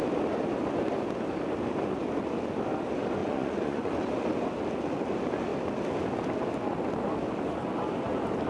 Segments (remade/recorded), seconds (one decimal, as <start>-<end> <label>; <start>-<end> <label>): 0.0-3.2 recorded; 3.2-3.9 remade; 3.9-8.5 recorded